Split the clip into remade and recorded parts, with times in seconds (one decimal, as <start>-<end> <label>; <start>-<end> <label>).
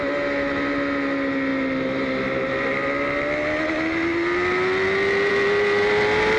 0.0-6.4 recorded